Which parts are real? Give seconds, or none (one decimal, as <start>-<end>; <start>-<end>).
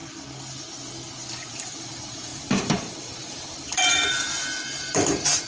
0.0-1.5